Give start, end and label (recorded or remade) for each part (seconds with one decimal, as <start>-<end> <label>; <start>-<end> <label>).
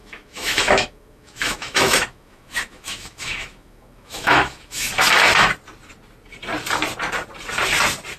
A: 0.0-4.9 remade; 4.9-8.2 recorded